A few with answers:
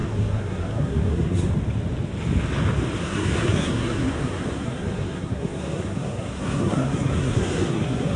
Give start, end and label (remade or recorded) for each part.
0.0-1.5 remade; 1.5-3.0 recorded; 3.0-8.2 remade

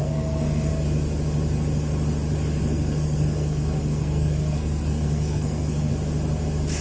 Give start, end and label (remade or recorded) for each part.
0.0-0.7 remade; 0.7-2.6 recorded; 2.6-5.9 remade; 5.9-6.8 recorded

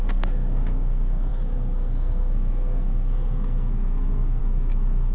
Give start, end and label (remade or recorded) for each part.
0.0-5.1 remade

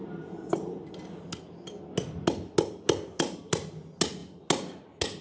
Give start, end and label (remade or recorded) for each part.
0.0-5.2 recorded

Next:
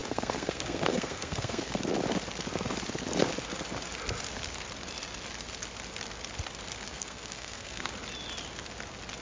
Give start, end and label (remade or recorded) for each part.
0.0-1.8 remade; 1.8-6.9 recorded; 6.9-7.9 remade; 7.9-9.2 recorded

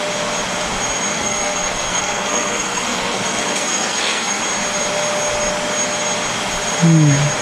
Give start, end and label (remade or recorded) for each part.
0.0-1.1 recorded; 1.1-4.4 remade; 4.4-7.4 recorded

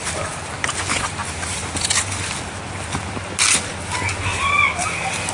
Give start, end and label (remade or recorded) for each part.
0.0-5.3 recorded